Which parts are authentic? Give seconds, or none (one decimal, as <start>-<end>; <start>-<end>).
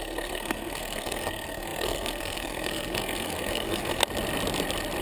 4.0-5.0